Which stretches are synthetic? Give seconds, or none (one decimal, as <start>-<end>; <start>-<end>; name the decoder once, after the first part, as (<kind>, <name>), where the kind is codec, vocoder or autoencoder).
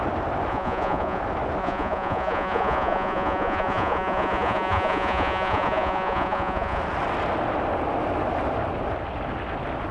0.5-1.2 (vocoder, Vocos); 1.6-6.8